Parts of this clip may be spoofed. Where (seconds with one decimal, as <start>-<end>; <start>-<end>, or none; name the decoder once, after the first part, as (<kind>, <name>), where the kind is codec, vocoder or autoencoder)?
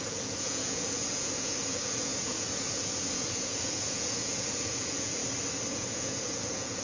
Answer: 0.0-5.2 (vocoder, Vocos); 5.7-6.8